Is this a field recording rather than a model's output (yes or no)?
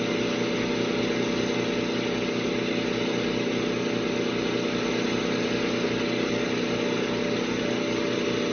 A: yes